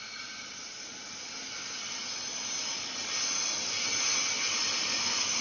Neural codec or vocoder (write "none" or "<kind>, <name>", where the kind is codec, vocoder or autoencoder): none